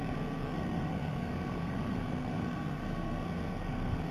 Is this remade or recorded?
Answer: remade